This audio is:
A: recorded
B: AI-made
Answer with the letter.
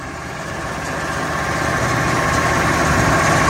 A